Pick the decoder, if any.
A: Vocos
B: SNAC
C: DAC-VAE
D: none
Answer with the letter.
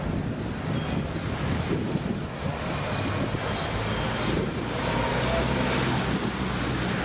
D